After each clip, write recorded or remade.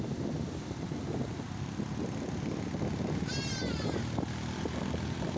recorded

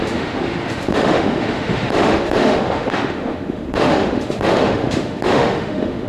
remade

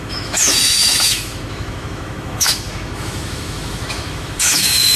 remade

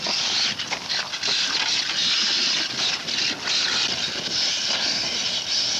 recorded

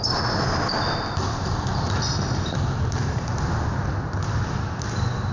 recorded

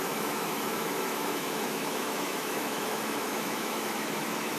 remade